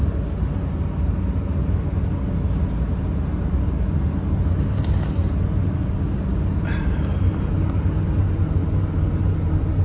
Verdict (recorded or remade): recorded